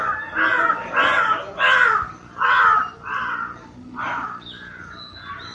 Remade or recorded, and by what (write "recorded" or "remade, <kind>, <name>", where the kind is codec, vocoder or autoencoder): recorded